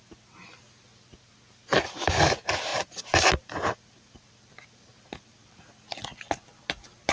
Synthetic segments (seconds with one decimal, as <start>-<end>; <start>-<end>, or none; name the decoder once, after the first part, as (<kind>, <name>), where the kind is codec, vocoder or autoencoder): 0.9-2.1 (vocoder, BigVGAN v2); 2.7-5.6